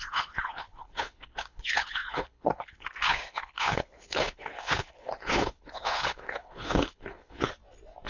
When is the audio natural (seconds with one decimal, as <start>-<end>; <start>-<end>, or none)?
7.5-8.1